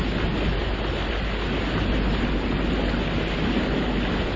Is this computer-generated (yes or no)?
no